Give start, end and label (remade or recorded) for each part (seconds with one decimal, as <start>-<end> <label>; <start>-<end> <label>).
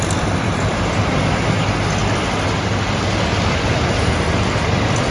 0.0-2.0 remade; 2.0-4.5 recorded; 4.5-5.1 remade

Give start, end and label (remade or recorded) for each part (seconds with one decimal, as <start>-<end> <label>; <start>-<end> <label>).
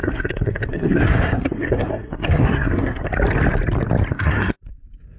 0.0-3.1 remade; 3.1-4.1 recorded; 4.1-4.6 remade; 4.6-5.2 recorded